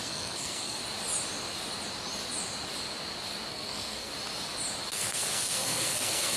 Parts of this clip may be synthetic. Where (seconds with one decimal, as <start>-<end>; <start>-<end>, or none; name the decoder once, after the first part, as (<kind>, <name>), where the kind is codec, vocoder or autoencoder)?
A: 0.0-0.8 (codec, SNAC); 3.5-4.1; 4.9-6.4